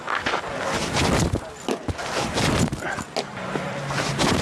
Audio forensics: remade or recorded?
recorded